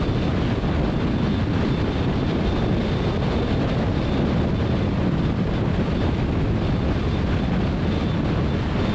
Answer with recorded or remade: recorded